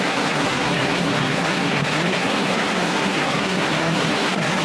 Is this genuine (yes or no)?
no